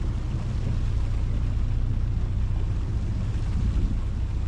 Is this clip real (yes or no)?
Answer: yes